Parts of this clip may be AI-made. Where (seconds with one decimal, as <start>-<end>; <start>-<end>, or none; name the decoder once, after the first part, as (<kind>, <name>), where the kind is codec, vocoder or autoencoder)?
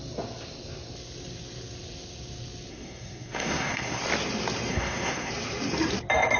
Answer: 2.7-4.0 (codec, SNAC); 4.7-5.3